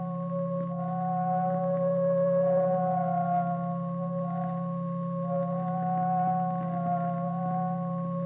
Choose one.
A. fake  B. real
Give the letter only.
B